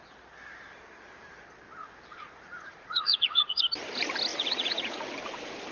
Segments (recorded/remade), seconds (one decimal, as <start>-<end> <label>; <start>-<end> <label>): 0.0-1.8 recorded; 1.8-3.6 remade; 3.6-4.3 recorded; 4.3-5.0 remade; 5.0-5.7 recorded